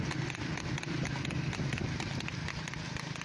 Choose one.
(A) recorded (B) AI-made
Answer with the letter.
A